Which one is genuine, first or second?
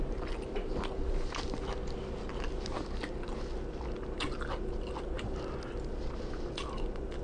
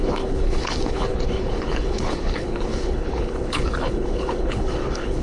first